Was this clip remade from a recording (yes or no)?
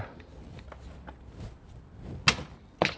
no